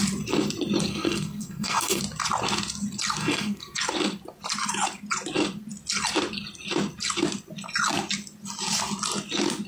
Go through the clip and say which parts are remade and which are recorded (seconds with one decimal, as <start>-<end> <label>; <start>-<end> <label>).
0.0-0.9 recorded; 0.9-2.0 remade; 2.0-3.2 recorded; 3.2-3.8 remade; 3.8-9.7 recorded

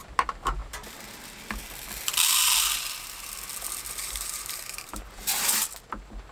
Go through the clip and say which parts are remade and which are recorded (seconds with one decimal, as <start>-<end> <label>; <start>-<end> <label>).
0.0-4.0 recorded; 4.0-5.2 remade; 5.2-6.3 recorded

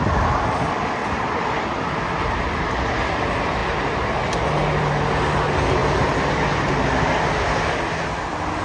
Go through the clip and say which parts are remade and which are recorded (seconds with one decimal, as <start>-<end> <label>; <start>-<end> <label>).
0.0-1.0 recorded; 1.0-2.7 remade; 2.7-8.6 recorded

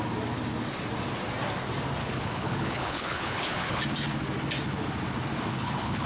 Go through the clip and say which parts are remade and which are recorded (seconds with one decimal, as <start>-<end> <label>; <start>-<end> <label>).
0.0-2.0 recorded; 2.0-3.8 remade; 3.8-5.5 recorded; 5.5-6.1 remade

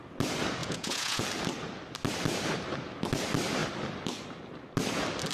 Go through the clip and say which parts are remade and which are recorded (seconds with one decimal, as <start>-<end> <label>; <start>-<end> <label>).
0.0-0.6 recorded; 0.6-1.2 remade; 1.2-5.3 recorded

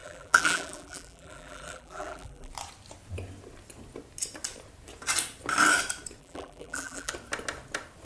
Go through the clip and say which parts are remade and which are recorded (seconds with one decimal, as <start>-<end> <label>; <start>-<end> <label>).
0.0-2.5 remade; 2.5-6.2 recorded; 6.2-7.1 remade; 7.1-8.1 recorded

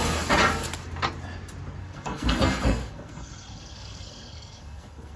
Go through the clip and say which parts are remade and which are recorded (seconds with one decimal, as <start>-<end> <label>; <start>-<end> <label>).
0.0-1.8 recorded; 1.8-5.2 remade

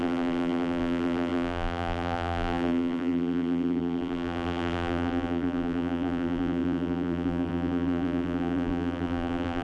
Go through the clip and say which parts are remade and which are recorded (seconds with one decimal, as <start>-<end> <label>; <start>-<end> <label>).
0.0-9.6 remade